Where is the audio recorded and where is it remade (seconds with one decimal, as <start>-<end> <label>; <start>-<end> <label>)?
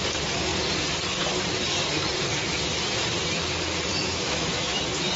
0.0-4.0 recorded; 4.0-4.8 remade; 4.8-5.2 recorded